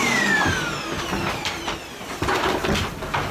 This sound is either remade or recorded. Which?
recorded